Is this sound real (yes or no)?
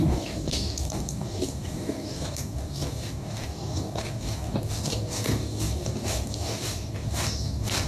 no